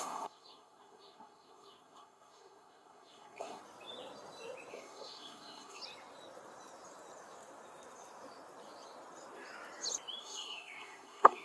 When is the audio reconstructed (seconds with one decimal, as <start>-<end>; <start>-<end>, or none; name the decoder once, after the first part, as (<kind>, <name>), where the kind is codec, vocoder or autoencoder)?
0.0-3.6 (codec, SNAC); 4.7-5.8; 10.2-11.4